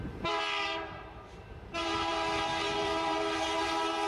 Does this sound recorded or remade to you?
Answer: remade